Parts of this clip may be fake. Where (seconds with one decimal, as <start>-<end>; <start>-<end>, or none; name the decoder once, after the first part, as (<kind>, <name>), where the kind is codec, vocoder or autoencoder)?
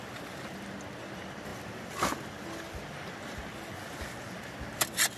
none